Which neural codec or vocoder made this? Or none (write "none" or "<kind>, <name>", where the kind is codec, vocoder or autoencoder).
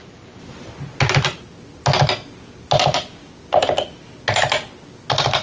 none